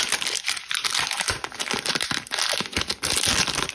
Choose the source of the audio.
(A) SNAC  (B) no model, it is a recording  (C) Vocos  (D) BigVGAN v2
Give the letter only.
B